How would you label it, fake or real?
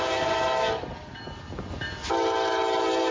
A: real